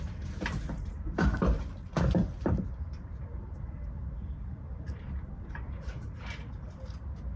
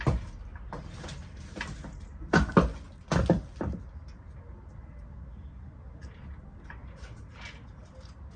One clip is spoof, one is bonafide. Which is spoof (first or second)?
first